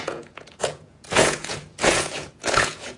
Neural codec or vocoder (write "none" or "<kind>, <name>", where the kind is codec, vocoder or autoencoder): vocoder, Vocos